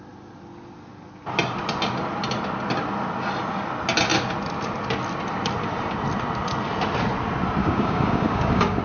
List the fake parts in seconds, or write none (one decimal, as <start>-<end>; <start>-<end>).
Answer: 7.6-8.8